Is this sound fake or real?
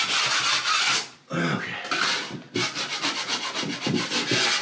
real